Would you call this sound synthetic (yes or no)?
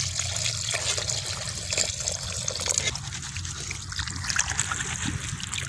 no